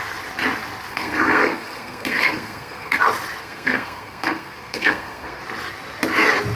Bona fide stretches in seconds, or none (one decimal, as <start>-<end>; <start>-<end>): 0.0-0.9; 3.0-3.4; 5.4-6.5